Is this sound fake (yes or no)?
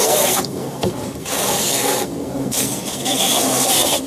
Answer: yes